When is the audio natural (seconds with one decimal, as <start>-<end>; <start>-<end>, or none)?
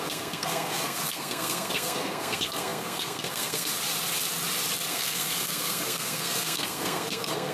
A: 3.7-4.9